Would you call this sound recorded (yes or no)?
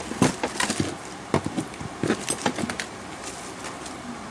yes